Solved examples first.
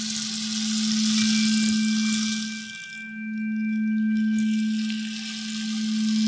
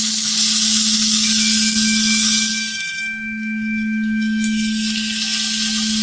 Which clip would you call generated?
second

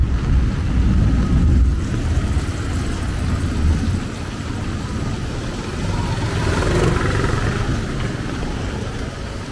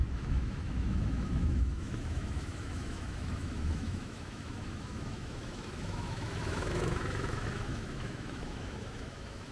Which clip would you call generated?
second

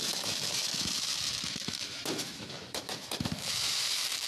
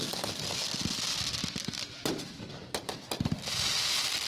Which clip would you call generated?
first